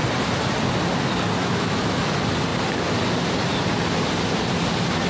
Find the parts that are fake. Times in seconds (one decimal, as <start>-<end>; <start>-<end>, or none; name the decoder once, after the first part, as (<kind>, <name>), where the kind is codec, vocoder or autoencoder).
1.4-2.0 (autoencoder, DAC-VAE)